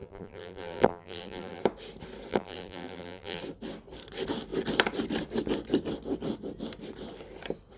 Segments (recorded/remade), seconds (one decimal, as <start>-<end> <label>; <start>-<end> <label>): 0.0-1.6 remade; 1.6-2.3 recorded; 2.3-3.4 remade; 3.4-7.8 recorded